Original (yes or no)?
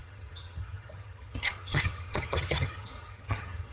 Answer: no